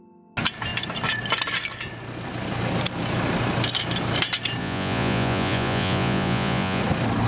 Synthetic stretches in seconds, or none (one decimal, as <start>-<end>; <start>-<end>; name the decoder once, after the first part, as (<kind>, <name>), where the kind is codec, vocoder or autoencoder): 4.6-6.8 (vocoder, Vocos)